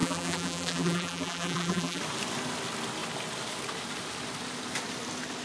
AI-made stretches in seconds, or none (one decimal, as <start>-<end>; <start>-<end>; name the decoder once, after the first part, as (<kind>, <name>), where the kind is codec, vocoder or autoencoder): 0.0-2.0 (vocoder, BigVGAN v2)